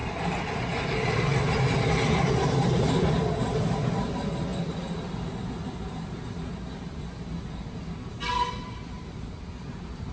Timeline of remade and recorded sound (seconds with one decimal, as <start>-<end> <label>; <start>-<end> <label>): 0.0-10.1 recorded